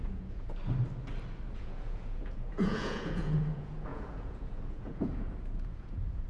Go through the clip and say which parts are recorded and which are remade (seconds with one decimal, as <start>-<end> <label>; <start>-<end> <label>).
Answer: 0.0-0.6 remade; 0.6-1.5 recorded; 1.5-6.3 remade